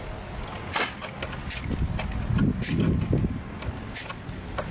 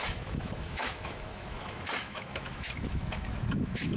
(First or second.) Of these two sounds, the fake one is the second